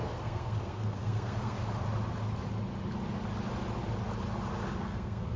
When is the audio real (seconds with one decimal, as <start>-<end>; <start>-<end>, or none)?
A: 1.6-4.8